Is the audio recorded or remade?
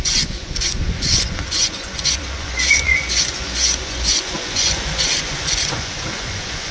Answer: remade